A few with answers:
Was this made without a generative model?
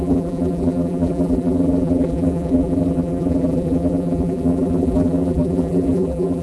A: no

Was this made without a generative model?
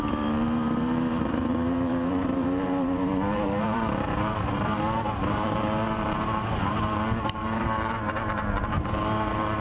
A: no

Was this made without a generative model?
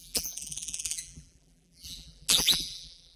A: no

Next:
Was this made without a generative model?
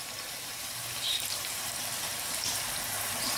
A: no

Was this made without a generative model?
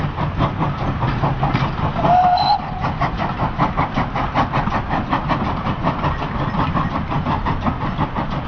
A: yes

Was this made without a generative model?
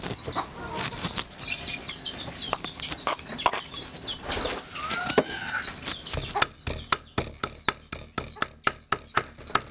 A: yes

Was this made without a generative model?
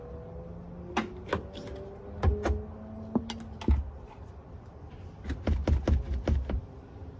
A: yes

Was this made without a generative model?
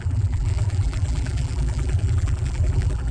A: no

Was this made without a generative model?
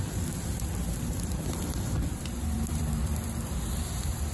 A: no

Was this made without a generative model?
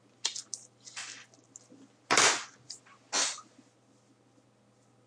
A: yes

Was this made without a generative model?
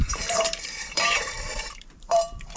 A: no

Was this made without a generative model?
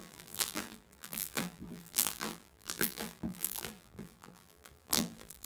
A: no